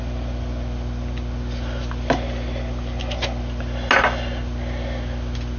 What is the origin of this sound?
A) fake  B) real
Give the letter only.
B